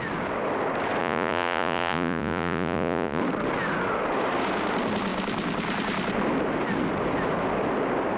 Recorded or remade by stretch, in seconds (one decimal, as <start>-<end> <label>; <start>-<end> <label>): 0.0-1.0 recorded; 1.0-3.2 remade; 3.2-8.2 recorded